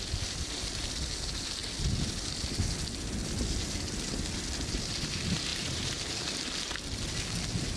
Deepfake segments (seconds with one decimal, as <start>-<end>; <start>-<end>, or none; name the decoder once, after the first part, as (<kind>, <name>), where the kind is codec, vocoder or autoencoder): 5.5-6.1 (vocoder, BigVGAN v2)